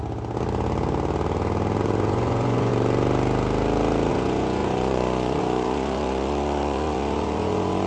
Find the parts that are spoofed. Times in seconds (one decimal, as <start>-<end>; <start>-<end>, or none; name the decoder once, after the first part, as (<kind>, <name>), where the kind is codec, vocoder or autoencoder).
1.8-2.7 (vocoder, Vocos); 4.1-7.9